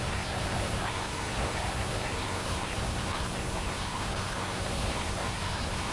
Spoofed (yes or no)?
yes